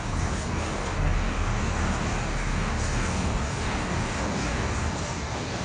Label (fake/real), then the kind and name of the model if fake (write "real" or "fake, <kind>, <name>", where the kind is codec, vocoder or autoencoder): fake, codec, DAC